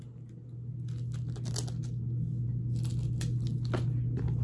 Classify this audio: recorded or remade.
recorded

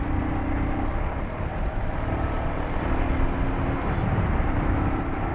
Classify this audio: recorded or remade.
recorded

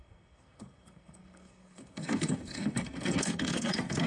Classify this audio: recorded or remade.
remade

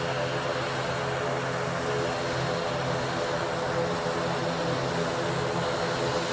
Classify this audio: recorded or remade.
recorded